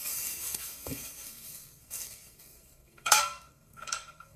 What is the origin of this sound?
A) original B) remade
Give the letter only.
B